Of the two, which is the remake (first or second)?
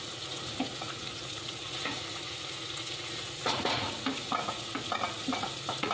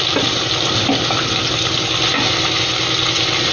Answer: first